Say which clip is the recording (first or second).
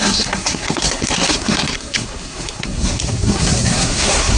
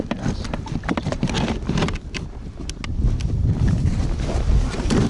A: second